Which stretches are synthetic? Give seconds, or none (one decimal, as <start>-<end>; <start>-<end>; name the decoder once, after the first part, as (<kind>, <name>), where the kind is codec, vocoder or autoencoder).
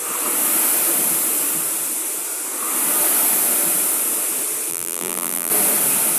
4.7-5.5 (vocoder, BigVGAN v2)